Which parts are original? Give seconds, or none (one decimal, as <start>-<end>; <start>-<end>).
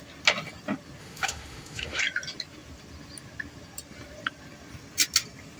0.0-1.0; 2.0-5.6